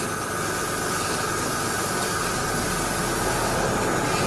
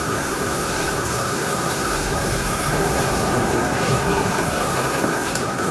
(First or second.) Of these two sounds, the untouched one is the first